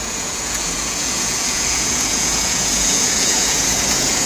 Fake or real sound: fake